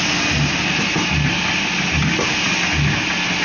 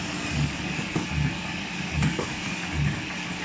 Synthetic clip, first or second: second